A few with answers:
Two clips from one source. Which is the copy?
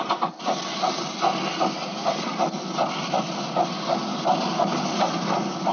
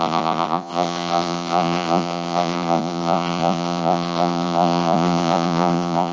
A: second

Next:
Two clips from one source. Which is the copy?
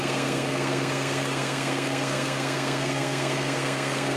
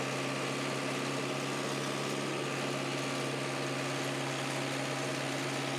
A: first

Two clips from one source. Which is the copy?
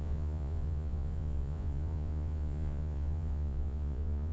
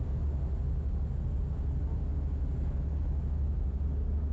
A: first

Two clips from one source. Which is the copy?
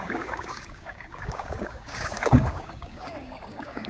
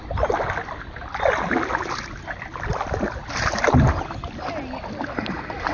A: first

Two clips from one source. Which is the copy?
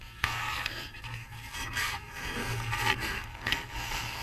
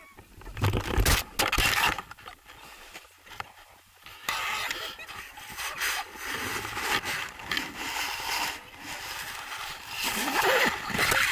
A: first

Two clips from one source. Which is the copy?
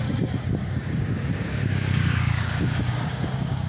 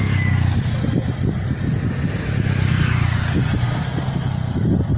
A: first